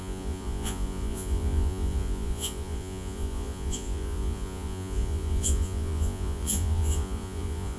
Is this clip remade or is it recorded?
remade